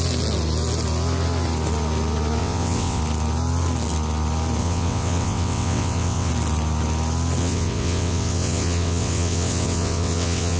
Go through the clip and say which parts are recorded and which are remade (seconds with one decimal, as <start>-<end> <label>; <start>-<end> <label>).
0.0-2.4 recorded; 2.4-3.0 remade; 3.0-4.6 recorded; 4.6-6.3 remade; 6.3-7.4 recorded; 7.4-10.6 remade